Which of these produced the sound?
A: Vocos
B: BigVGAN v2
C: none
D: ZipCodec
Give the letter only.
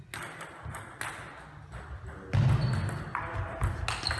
C